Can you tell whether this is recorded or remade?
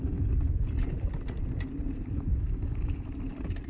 recorded